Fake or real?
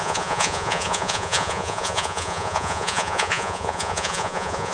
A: fake